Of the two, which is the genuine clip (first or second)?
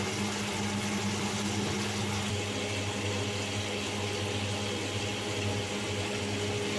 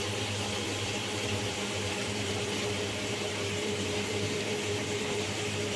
first